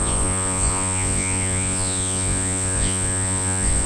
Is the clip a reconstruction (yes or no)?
yes